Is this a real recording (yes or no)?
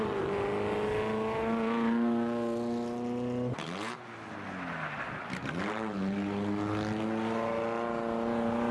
yes